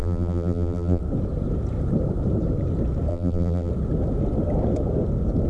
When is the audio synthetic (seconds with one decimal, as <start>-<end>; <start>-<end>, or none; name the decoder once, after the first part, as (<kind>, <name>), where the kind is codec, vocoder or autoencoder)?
0.0-1.0 (vocoder, BigVGAN v2); 3.1-3.7